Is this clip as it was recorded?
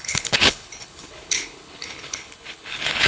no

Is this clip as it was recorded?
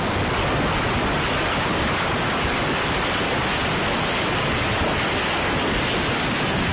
yes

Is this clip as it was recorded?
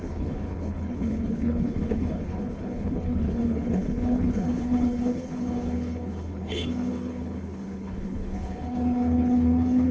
no